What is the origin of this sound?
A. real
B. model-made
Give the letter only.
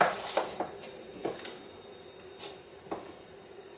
A